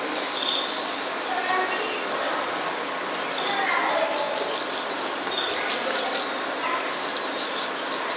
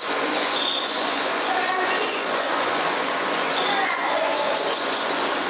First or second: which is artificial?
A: second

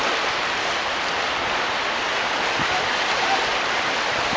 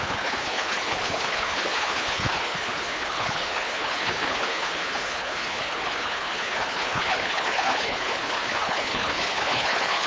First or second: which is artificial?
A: second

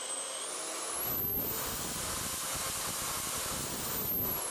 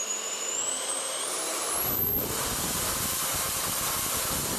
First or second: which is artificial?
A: second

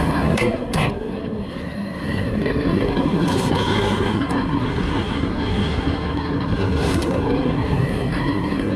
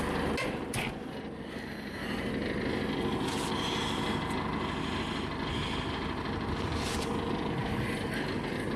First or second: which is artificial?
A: first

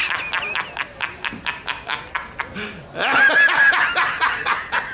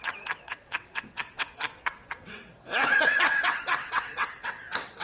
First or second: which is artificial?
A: second